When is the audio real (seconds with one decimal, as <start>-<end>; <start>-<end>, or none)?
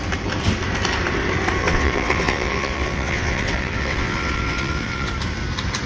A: 0.0-1.6; 5.1-5.9